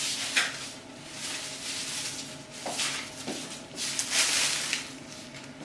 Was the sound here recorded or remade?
recorded